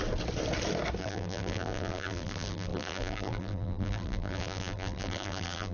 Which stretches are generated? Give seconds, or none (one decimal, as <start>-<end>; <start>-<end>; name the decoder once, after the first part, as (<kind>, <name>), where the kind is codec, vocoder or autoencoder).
1.0-5.7 (vocoder, BigVGAN v2)